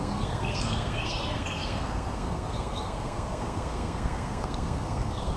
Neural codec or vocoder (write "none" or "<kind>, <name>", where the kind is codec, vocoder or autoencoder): codec, SNAC